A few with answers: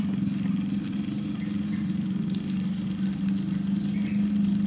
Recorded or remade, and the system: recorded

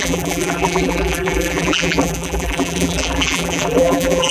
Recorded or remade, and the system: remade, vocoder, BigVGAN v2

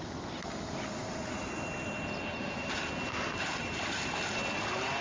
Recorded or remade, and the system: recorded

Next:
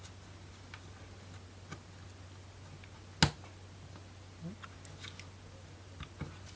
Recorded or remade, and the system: recorded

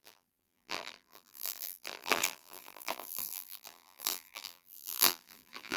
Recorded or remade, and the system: remade, vocoder, BigVGAN v2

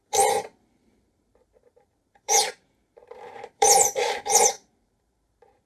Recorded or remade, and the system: remade, vocoder, BigVGAN v2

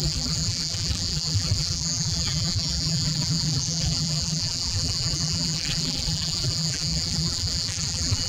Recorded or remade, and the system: remade, vocoder, BigVGAN v2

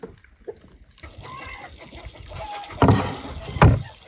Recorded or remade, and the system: recorded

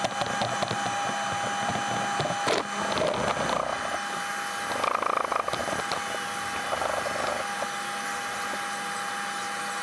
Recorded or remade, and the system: recorded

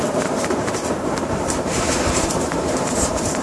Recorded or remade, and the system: remade, vocoder, BigVGAN v2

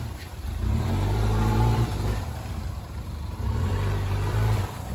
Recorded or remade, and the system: remade, vocoder, BigVGAN v2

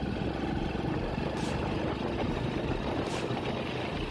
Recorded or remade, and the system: recorded